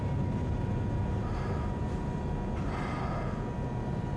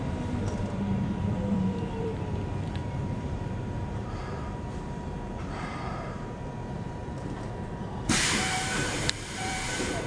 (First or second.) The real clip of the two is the first